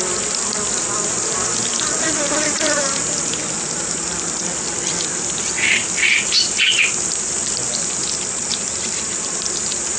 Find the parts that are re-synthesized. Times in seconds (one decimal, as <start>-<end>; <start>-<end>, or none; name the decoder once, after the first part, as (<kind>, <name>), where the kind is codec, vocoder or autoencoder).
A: none